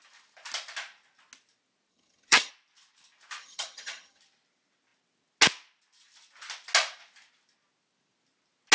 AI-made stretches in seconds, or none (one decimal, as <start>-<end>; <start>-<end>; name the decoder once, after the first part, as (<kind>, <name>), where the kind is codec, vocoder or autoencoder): 1.9-2.5 (vocoder, HiFi-GAN); 3.4-4.2